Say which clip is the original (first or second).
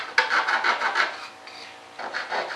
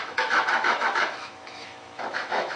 first